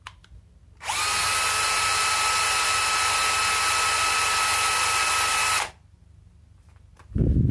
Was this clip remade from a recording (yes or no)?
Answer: no